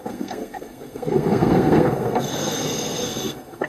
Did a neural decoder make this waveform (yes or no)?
yes